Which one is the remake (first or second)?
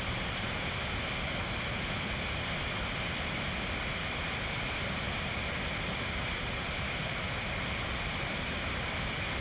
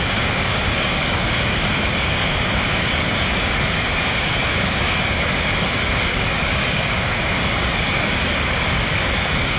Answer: second